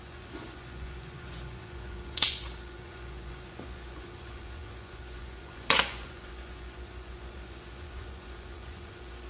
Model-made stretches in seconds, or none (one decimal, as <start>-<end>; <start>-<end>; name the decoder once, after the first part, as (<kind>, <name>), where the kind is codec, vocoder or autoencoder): 0.0-9.3 (vocoder, Vocos)